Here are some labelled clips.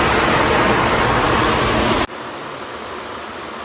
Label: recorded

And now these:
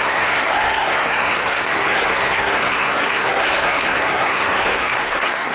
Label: remade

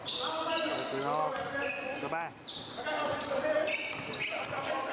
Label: recorded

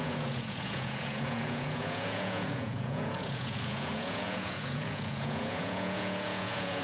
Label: remade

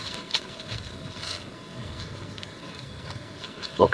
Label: remade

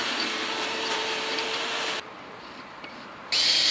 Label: remade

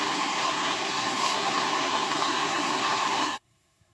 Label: remade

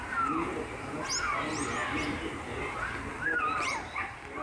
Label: recorded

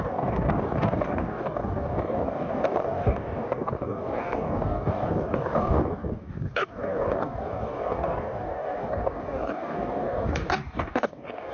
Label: remade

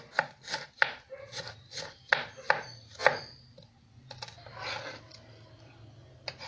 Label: recorded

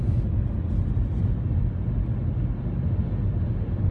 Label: recorded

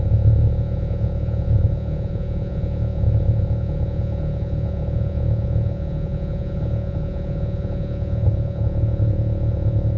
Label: remade